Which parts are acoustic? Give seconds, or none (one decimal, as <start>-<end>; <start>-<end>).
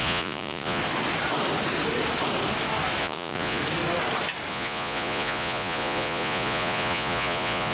0.8-3.0; 3.6-4.5